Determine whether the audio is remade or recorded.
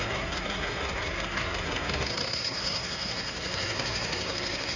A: remade